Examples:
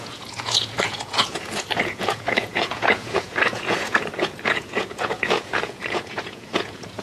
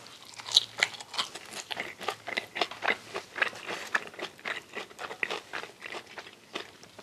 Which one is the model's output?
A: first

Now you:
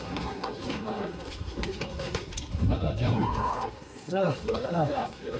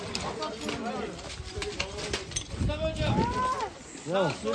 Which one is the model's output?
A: first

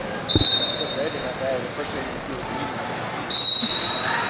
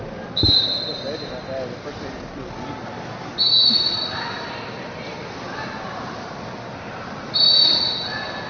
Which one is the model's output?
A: first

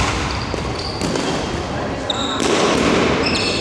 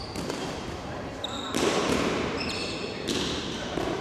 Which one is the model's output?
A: second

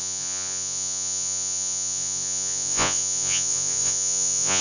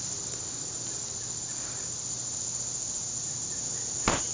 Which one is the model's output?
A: first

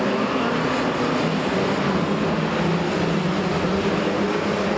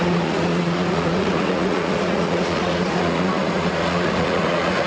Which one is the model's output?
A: second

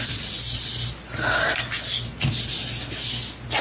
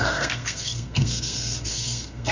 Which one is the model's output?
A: second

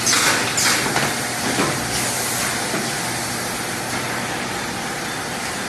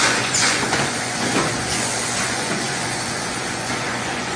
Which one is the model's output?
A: second